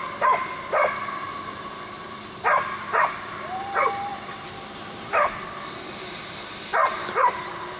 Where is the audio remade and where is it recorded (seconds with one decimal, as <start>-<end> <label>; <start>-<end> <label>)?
0.0-1.0 recorded; 1.0-7.8 remade